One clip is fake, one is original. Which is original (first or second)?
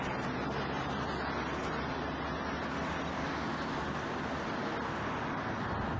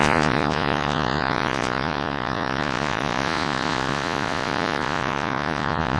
first